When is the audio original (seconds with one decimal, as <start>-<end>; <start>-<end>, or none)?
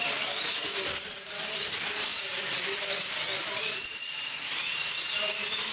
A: none